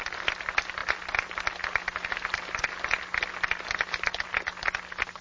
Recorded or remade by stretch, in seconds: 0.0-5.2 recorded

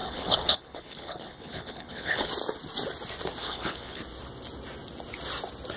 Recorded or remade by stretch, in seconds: 0.0-2.3 remade; 2.3-3.4 recorded; 3.4-4.0 remade; 4.0-5.8 recorded

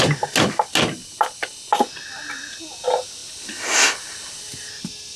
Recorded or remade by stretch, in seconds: 0.0-5.2 recorded